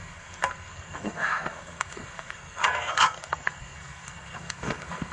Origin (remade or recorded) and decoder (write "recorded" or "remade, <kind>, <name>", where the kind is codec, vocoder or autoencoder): remade, codec, SNAC